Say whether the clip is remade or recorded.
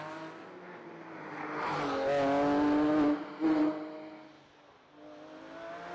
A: recorded